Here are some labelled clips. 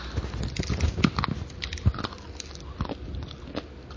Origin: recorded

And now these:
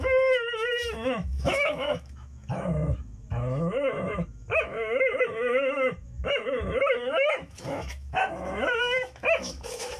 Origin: remade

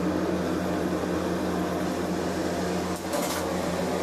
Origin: recorded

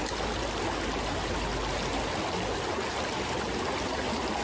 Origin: recorded